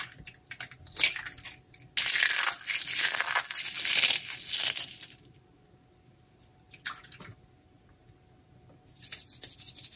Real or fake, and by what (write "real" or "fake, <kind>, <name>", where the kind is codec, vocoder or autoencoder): real